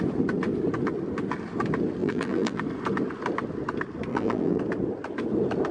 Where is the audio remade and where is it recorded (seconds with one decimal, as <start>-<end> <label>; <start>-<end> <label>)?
0.0-2.0 recorded; 2.0-2.6 remade; 2.6-4.1 recorded; 4.1-4.6 remade; 4.6-5.7 recorded